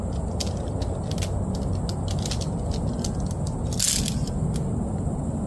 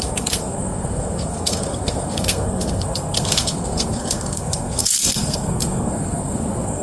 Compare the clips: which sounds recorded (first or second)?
first